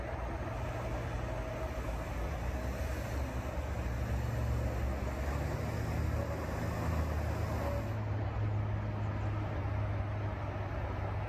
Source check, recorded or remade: recorded